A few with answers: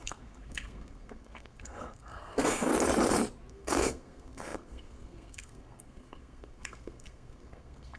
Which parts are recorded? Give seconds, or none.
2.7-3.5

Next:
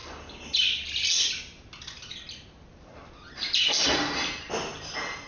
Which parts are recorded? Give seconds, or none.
0.0-5.3

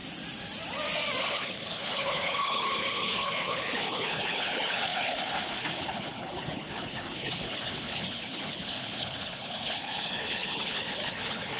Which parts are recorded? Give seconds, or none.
0.0-1.2